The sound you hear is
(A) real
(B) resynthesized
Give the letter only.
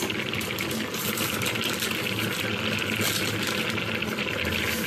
A